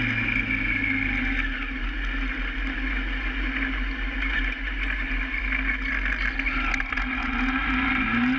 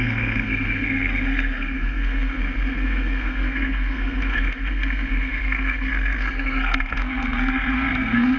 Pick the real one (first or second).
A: first